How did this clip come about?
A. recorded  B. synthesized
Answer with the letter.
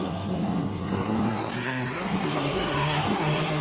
B